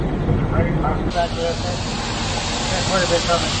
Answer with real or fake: real